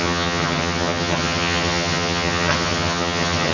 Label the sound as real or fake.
fake